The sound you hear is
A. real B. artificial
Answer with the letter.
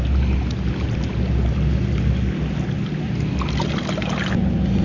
A